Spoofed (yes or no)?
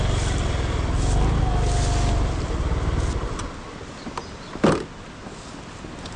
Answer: no